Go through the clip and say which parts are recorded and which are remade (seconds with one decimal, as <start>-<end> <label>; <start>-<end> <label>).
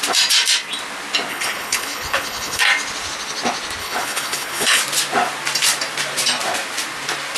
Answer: 0.0-1.3 recorded; 1.3-2.6 remade; 2.6-3.8 recorded; 3.8-4.8 remade; 4.8-7.4 recorded